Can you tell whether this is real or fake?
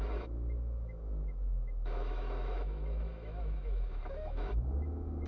fake